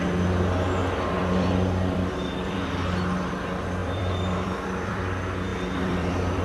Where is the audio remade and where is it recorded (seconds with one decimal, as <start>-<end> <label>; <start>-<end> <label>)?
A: 0.0-0.8 recorded; 0.8-3.3 remade; 3.3-3.8 recorded; 3.8-5.0 remade; 5.0-5.5 recorded; 5.5-6.4 remade

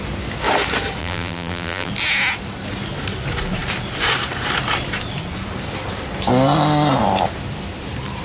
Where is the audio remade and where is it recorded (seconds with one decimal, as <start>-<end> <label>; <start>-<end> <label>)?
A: 0.0-1.0 recorded; 1.0-1.9 remade; 1.9-8.2 recorded